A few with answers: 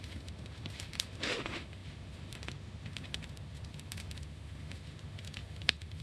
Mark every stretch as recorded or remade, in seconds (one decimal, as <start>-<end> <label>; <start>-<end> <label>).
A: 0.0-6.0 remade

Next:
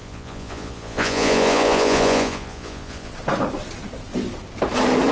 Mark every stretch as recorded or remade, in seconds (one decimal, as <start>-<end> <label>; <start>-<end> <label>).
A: 0.0-3.1 remade; 3.1-5.1 recorded

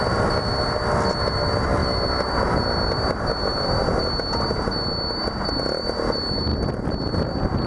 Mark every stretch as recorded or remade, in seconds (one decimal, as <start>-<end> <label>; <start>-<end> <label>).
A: 0.0-7.7 recorded

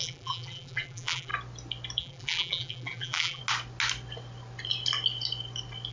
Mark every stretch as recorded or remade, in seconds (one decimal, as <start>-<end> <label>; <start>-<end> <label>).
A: 0.0-1.3 remade; 1.3-2.0 recorded; 2.0-3.4 remade; 3.4-5.9 recorded

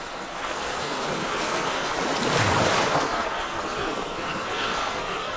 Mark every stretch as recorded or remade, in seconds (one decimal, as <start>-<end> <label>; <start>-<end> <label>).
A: 0.0-1.9 remade; 1.9-2.9 recorded; 2.9-5.4 remade

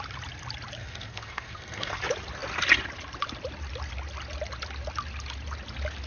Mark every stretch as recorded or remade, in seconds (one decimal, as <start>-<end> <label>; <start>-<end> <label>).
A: 0.0-0.8 recorded; 0.8-2.0 remade; 2.0-6.1 recorded

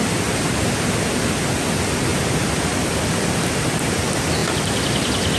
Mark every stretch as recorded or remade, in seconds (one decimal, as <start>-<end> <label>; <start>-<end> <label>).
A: 0.0-5.4 recorded